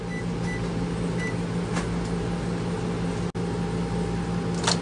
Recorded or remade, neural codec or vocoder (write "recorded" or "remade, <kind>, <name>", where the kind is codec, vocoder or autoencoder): recorded